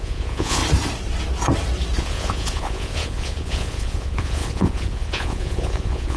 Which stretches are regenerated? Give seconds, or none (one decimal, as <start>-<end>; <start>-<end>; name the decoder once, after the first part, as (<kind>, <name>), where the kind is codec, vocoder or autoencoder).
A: 0.0-0.6 (vocoder, Vocos); 2.0-6.2